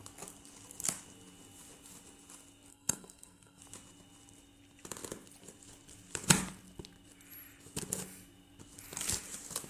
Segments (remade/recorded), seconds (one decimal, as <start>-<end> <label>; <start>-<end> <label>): 0.0-2.7 recorded; 2.7-3.6 remade; 3.6-9.7 recorded